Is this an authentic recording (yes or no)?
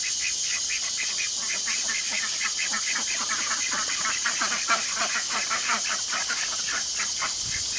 yes